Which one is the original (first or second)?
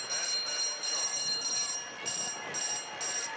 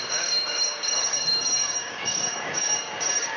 first